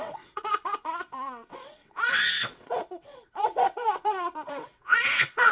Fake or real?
fake